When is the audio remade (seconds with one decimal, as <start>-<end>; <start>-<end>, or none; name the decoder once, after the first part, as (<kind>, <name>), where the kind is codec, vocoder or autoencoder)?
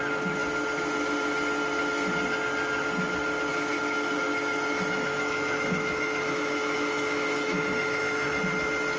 3.5-8.4 (autoencoder, DAC-VAE)